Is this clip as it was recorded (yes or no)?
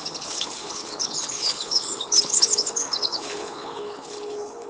no